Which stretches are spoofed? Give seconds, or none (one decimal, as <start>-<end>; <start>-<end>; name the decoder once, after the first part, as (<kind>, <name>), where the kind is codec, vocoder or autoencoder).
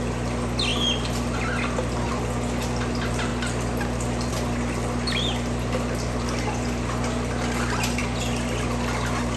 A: none